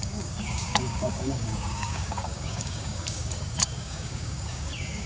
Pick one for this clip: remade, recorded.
remade